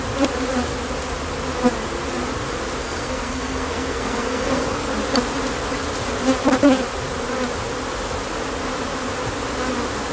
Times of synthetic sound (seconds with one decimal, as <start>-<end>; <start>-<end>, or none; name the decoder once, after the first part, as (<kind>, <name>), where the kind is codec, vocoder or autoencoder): 2.8-4.9 (codec, SNAC)